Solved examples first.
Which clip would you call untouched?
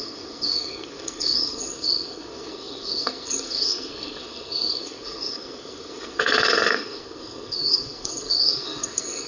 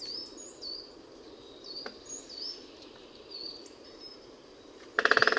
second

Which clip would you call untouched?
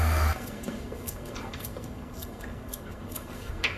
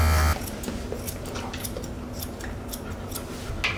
second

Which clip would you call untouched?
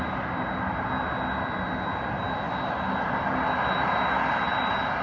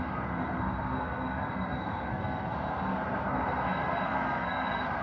first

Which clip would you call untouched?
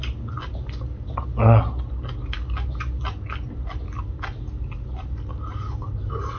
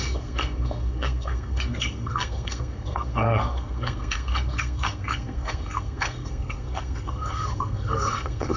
first